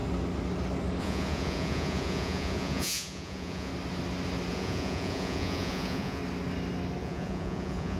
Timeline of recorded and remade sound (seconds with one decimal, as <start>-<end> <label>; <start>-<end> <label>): 0.0-1.0 recorded; 1.0-3.7 remade; 3.7-4.5 recorded; 4.5-6.2 remade; 6.2-7.0 recorded; 7.0-8.0 remade